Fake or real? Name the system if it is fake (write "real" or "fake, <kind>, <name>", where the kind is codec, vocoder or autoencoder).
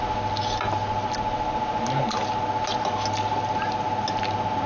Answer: real